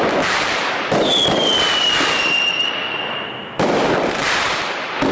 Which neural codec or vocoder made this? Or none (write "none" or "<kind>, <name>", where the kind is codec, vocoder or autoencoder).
none